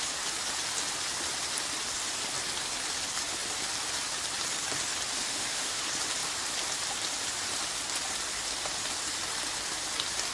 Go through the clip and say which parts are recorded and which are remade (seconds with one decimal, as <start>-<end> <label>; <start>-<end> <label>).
0.0-5.2 recorded; 5.2-5.8 remade; 5.8-10.3 recorded

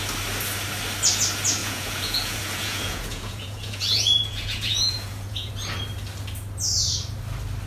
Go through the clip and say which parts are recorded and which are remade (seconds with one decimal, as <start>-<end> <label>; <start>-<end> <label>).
0.0-1.6 recorded; 1.6-5.5 remade; 5.5-7.7 recorded

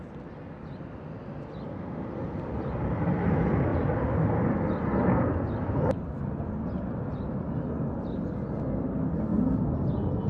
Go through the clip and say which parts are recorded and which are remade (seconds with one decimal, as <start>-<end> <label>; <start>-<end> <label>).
0.0-3.7 recorded; 3.7-4.3 remade; 4.3-10.3 recorded

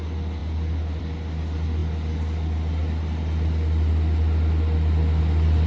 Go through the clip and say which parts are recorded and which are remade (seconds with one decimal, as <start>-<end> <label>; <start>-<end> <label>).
0.0-5.7 recorded

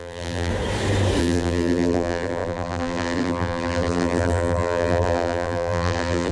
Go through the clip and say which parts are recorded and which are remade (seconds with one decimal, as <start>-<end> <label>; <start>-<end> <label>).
0.0-0.5 remade; 0.5-1.2 recorded; 1.2-6.3 remade

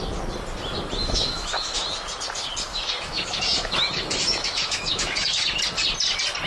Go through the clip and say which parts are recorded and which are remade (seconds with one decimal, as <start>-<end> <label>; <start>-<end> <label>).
0.0-1.0 recorded; 1.0-1.8 remade; 1.8-2.7 recorded; 2.7-5.6 remade; 5.6-6.5 recorded